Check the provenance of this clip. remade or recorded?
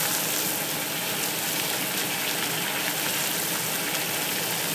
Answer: recorded